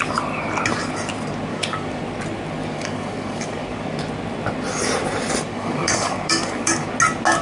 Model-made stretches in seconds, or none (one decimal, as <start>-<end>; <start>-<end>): 1.5-2.0; 2.6-4.0; 5.5-6.9